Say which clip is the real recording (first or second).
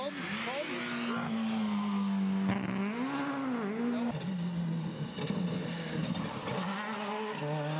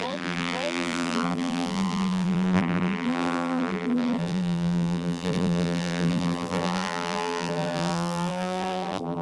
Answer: first